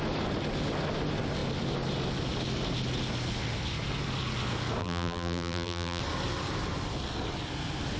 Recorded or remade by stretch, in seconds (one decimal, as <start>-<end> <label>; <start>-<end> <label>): 0.0-4.8 recorded; 4.8-6.0 remade; 6.0-8.0 recorded